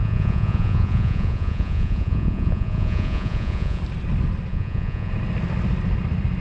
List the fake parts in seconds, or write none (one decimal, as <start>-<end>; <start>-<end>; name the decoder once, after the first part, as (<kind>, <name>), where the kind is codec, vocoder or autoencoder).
0.0-3.8 (vocoder, Vocos); 4.5-5.1